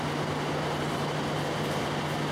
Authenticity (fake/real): real